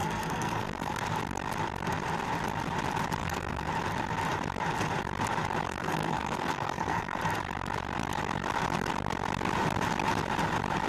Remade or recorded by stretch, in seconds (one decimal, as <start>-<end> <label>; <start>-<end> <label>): 0.0-1.0 remade; 1.0-3.2 recorded; 3.2-3.7 remade; 3.7-5.7 recorded; 5.7-7.2 remade; 7.2-10.9 recorded